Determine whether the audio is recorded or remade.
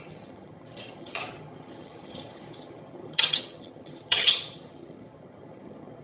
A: remade